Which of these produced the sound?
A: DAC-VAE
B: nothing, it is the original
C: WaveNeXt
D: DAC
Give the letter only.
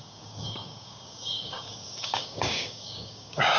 D